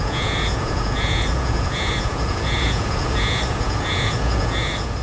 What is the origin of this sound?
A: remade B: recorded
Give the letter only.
A